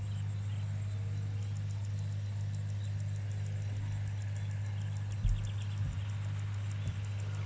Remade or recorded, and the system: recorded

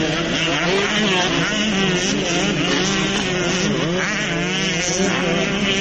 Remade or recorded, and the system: recorded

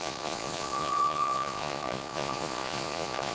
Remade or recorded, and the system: remade, vocoder, Vocos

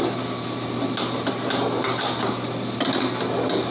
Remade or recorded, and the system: recorded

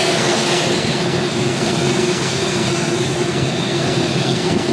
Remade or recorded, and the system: remade, codec, SNAC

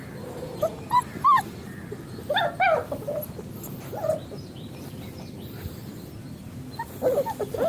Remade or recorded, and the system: recorded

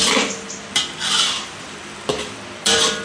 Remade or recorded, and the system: remade, vocoder, BigVGAN v2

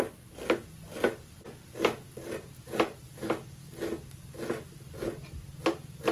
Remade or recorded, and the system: recorded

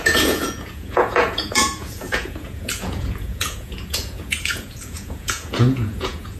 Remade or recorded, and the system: remade, vocoder, Vocos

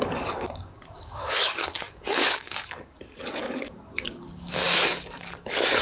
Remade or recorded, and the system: remade, codec, DAC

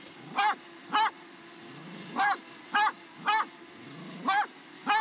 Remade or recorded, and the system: recorded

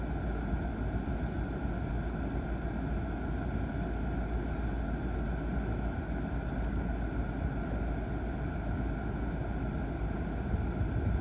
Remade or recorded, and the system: recorded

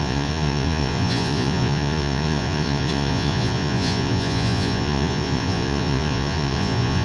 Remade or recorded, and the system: remade, vocoder, Vocos